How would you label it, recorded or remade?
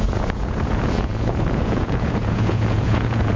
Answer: remade